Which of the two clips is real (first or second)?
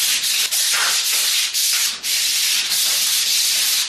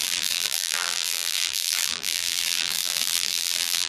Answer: first